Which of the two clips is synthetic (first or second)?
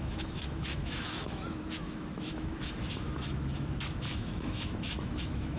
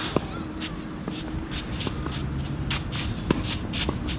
first